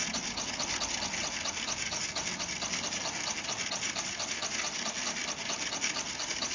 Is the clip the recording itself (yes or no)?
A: yes